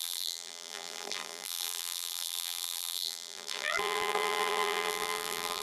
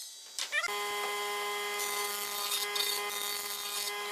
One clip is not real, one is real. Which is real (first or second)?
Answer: second